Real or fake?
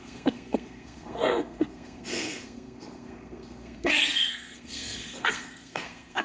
fake